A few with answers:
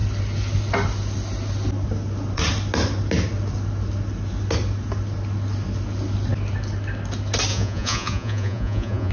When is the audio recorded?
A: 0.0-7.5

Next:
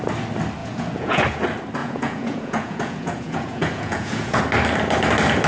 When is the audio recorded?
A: 0.0-0.6; 1.4-1.8; 4.4-5.5

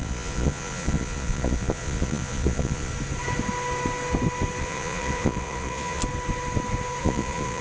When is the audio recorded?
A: 2.9-4.6; 6.0-7.0

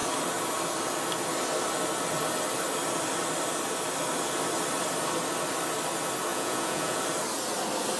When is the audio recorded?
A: 0.0-6.3; 7.0-8.0

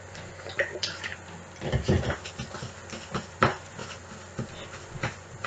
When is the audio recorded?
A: 1.1-3.3; 3.8-4.8

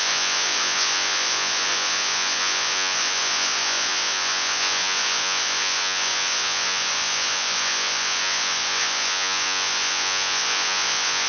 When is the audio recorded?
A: none

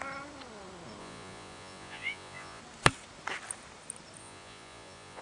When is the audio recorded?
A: 0.0-1.0; 2.6-4.2

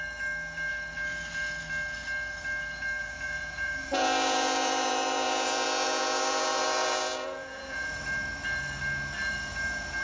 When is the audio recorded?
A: 0.0-3.0; 7.9-10.0